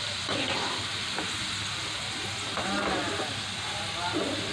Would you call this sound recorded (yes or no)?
yes